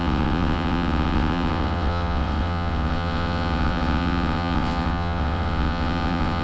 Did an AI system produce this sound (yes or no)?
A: yes